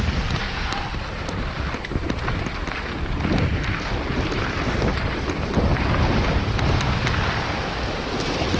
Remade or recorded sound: recorded